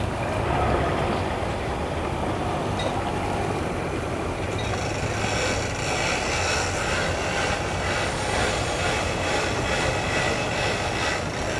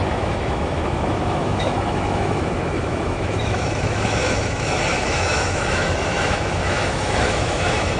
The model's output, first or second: second